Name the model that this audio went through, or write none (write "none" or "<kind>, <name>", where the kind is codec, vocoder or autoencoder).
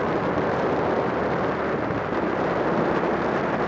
none